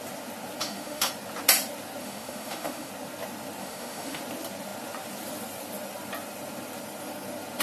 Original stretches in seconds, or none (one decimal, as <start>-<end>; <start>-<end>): 0.0-0.6; 1.1-2.0; 2.9-3.6; 4.2-7.6